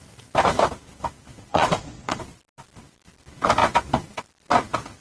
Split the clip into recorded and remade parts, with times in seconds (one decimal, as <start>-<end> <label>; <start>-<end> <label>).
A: 0.0-1.5 recorded; 1.5-2.2 remade; 2.2-5.0 recorded

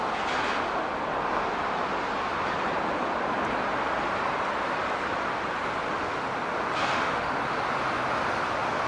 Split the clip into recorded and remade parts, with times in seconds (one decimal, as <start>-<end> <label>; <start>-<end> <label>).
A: 0.0-6.9 recorded; 6.9-7.4 remade; 7.4-8.9 recorded